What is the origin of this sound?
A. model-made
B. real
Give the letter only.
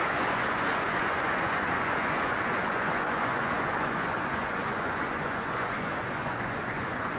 A